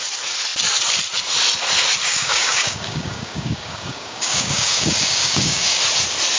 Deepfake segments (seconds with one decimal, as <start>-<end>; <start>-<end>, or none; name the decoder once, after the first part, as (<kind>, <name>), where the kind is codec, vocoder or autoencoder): 2.0-5.8 (codec, DAC)